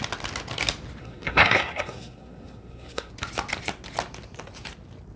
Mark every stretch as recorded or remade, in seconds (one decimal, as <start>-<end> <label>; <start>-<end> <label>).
0.0-1.0 recorded; 1.0-3.1 remade; 3.1-5.2 recorded